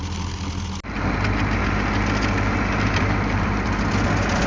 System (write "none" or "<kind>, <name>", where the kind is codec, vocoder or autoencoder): none